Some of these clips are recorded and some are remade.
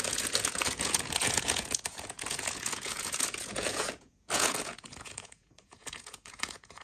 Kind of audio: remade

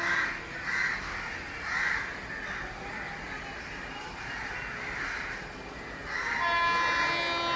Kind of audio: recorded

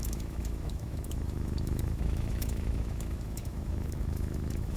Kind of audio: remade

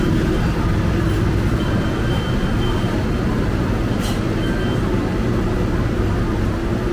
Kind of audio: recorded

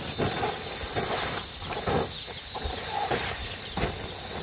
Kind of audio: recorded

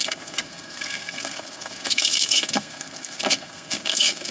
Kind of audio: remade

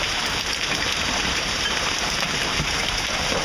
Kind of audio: remade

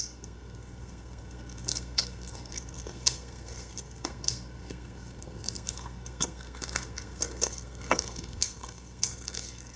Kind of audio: remade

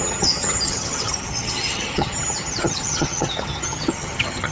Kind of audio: remade